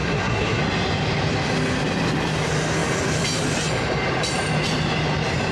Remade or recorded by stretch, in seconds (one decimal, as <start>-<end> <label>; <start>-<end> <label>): 0.0-0.6 remade; 0.6-5.5 recorded